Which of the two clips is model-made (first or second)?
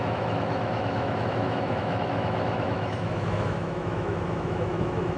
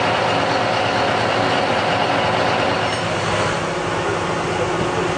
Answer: first